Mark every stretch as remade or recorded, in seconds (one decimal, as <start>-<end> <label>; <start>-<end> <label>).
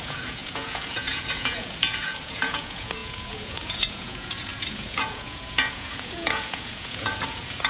0.0-7.7 remade